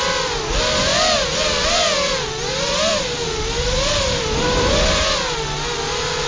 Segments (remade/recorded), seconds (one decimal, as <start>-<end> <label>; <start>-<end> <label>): 0.0-0.9 recorded; 0.9-4.7 remade; 4.7-6.3 recorded